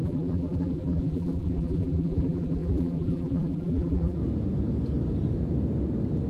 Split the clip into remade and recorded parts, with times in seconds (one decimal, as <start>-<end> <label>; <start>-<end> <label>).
0.0-4.2 remade; 4.2-6.3 recorded

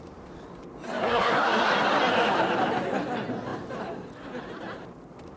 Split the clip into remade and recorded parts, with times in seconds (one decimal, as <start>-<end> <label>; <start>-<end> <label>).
0.0-1.0 recorded; 1.0-1.7 remade; 1.7-5.4 recorded

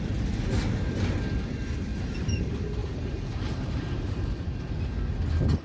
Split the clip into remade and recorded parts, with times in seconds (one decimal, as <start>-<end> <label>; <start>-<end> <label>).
0.0-2.8 recorded; 2.8-4.7 remade; 4.7-5.6 recorded

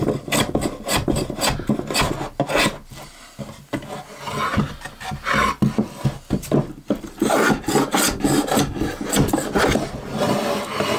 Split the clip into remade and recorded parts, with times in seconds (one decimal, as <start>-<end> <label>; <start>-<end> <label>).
0.0-11.0 recorded

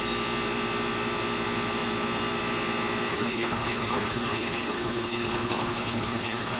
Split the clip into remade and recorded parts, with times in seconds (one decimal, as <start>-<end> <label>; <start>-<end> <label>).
0.0-3.1 recorded; 3.1-6.6 remade